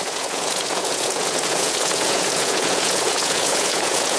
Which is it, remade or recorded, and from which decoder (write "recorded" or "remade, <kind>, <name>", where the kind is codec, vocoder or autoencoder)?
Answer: remade, vocoder, Vocos